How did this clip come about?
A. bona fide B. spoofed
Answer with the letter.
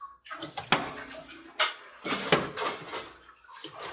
A